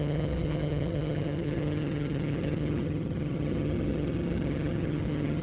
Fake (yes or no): yes